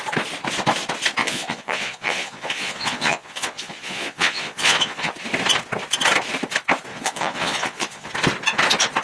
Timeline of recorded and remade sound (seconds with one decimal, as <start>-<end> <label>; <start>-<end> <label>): 0.0-1.2 recorded; 1.2-5.1 remade; 5.1-6.9 recorded; 6.9-8.1 remade; 8.1-9.0 recorded